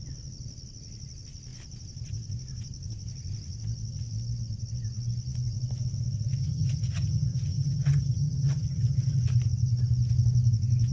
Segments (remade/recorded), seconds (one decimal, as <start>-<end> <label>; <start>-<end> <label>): 0.0-6.4 recorded; 6.4-9.2 remade; 9.2-10.9 recorded